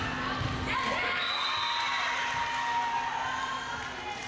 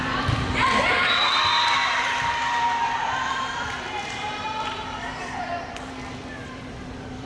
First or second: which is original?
first